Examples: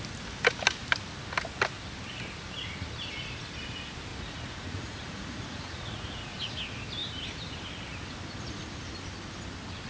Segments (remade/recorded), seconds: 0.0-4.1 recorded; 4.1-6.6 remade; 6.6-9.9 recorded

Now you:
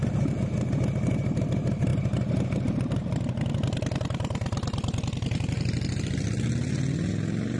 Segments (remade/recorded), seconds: 0.0-1.9 recorded; 1.9-2.7 remade; 2.7-7.6 recorded

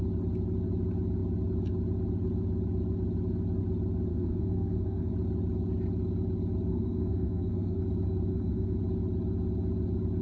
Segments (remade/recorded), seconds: 0.0-4.1 recorded; 4.1-5.1 remade; 5.1-6.7 recorded; 6.7-7.8 remade; 7.8-8.3 recorded; 8.3-8.8 remade; 8.8-10.2 recorded

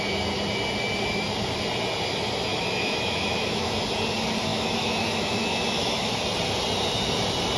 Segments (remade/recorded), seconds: 0.0-2.5 recorded; 2.5-3.7 remade; 3.7-4.5 recorded; 4.5-6.2 remade; 6.2-7.6 recorded

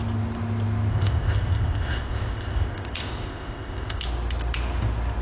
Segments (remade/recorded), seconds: 0.0-0.9 recorded; 0.9-4.0 remade; 4.0-5.2 recorded

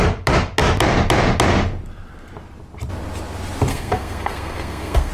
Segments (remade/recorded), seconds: 0.0-3.7 recorded; 3.7-5.1 remade

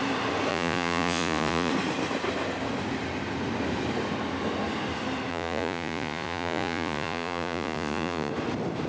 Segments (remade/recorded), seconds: 0.0-0.5 recorded; 0.5-1.7 remade; 1.7-5.3 recorded; 5.3-8.3 remade; 8.3-8.9 recorded